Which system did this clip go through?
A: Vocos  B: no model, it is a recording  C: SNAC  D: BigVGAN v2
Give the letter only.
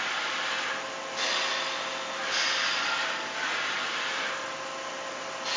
B